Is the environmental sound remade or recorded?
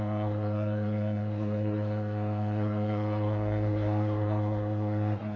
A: remade